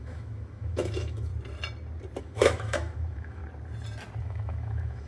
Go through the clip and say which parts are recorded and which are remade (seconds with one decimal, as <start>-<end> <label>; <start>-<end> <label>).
0.0-1.3 remade; 1.3-2.2 recorded; 2.2-3.4 remade; 3.4-4.2 recorded; 4.2-5.1 remade